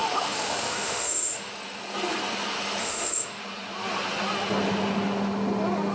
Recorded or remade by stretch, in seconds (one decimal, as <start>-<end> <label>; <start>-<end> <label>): 0.0-1.5 remade; 1.5-2.8 recorded; 2.8-3.4 remade; 3.4-5.9 recorded